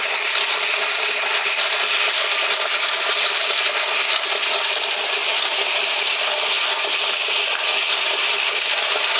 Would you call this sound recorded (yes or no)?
yes